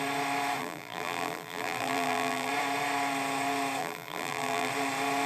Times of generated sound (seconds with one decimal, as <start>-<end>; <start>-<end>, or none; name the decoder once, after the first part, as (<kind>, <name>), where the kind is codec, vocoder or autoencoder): 0.6-2.5 (vocoder, BigVGAN v2); 3.8-4.7